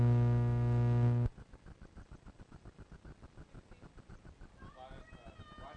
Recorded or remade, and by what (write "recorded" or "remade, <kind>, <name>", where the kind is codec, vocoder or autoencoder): recorded